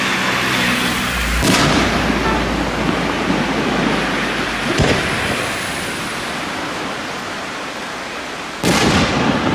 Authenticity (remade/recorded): recorded